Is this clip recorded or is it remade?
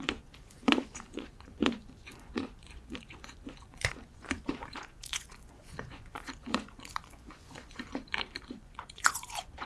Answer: remade